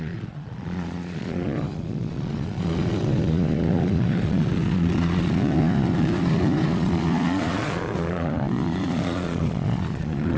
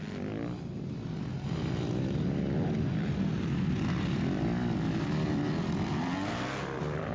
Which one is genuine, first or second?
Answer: second